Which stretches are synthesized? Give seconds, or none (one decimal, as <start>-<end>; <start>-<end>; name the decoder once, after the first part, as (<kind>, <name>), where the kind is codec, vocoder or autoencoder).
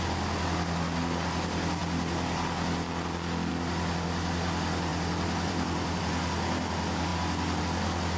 4.9-6.0 (vocoder, BigVGAN v2)